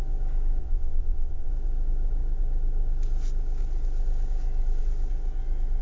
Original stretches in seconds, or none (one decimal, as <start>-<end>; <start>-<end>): 0.0-0.6; 1.5-5.8